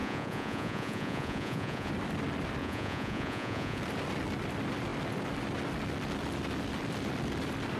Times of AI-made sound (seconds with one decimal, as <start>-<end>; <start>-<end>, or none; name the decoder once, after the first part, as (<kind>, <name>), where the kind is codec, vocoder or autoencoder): 0.0-1.9 (vocoder, Vocos); 2.6-3.8